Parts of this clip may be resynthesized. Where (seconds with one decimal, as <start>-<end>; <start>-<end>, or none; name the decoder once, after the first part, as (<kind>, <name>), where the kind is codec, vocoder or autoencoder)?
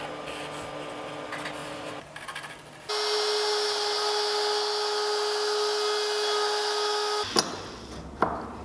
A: 1.6-2.2 (vocoder, BigVGAN v2)